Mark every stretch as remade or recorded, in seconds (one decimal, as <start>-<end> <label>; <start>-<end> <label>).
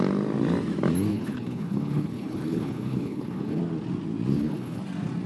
0.0-1.1 recorded; 1.1-3.6 remade; 3.6-4.3 recorded; 4.3-4.8 remade; 4.8-5.3 recorded